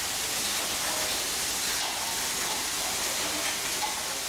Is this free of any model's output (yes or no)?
yes